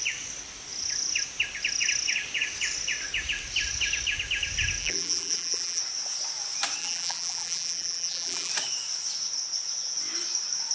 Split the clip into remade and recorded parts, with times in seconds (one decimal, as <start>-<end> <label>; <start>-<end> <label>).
0.0-4.8 recorded; 4.8-5.8 remade; 5.8-6.8 recorded; 6.8-8.5 remade; 8.5-10.7 recorded

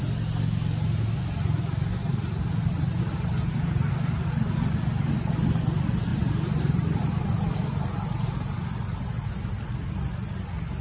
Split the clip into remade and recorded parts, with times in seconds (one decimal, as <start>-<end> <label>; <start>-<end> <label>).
0.0-6.1 recorded; 6.1-6.7 remade; 6.7-10.8 recorded

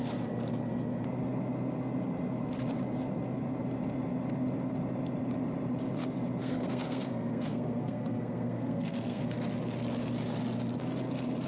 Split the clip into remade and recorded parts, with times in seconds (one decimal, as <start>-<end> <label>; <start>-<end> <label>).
0.0-6.4 recorded; 6.4-9.2 remade; 9.2-11.5 recorded

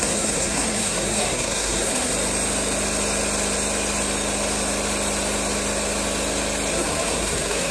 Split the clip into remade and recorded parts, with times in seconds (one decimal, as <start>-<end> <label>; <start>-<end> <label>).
0.0-2.1 remade; 2.1-6.7 recorded; 6.7-7.7 remade